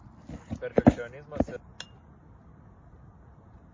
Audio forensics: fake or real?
real